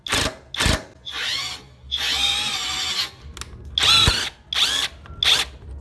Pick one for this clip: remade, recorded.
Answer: recorded